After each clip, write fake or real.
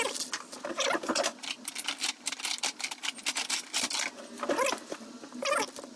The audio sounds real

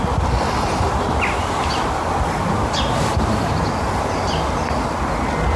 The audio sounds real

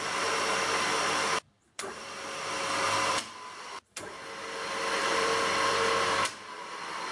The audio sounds fake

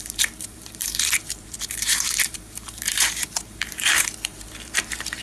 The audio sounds fake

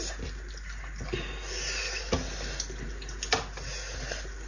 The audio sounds real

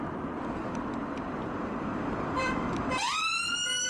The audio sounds fake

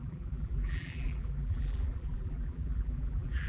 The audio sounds fake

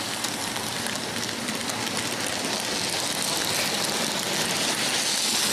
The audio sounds real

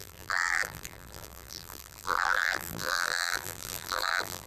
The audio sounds fake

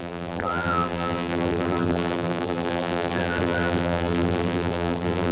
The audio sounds fake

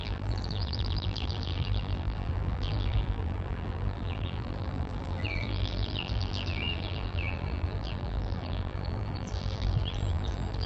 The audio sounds fake